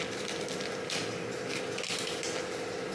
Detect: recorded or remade recorded